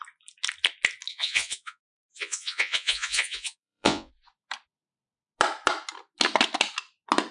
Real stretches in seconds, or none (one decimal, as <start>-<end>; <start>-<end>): 0.0-1.1; 4.1-7.3